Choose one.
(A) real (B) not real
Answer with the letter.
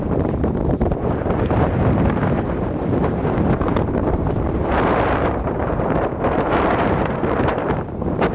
B